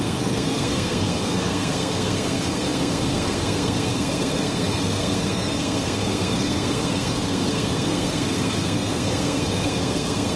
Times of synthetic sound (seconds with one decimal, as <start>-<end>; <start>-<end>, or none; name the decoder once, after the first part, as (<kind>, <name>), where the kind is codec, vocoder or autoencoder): 0.0-10.4 (codec, SNAC)